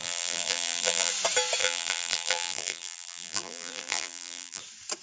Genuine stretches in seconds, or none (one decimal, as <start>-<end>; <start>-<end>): 1.1-1.6; 4.6-5.0